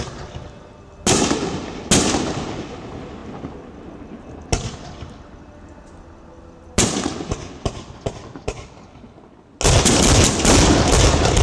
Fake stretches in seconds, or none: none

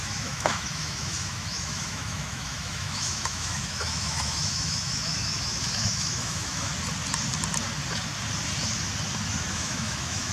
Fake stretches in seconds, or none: 0.0-6.7; 9.5-10.3

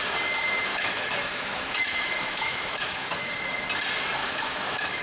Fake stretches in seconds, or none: 0.7-3.3; 4.2-5.0

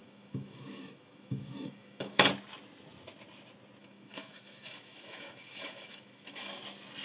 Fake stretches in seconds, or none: 0.0-2.3; 3.8-6.6

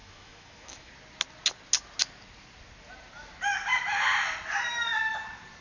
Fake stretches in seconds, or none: 0.0-0.9

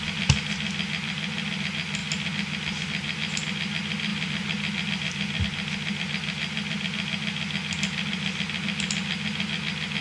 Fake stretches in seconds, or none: none

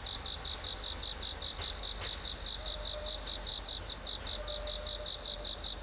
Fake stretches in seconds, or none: none

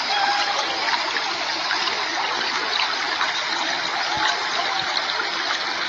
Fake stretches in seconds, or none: none